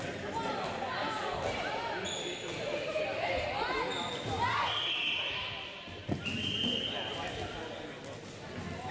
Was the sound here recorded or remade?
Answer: recorded